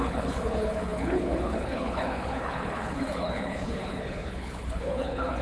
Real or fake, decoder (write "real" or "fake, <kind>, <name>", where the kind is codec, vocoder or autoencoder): fake, codec, HILCodec